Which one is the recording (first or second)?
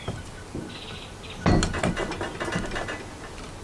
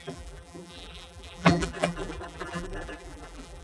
first